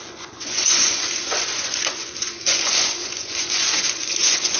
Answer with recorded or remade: remade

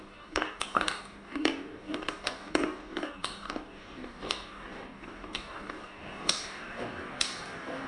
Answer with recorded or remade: remade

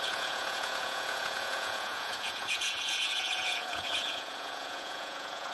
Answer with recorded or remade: remade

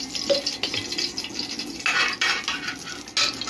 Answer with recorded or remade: recorded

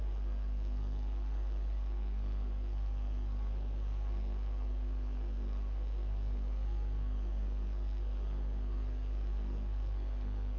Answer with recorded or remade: remade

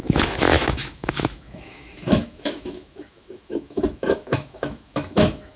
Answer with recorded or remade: remade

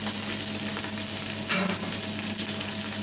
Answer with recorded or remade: recorded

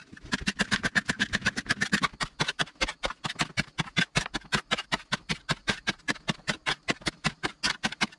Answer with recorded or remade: recorded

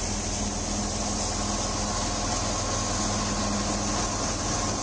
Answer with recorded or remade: recorded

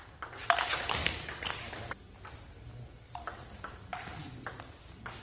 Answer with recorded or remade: recorded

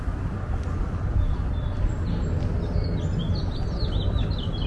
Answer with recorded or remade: recorded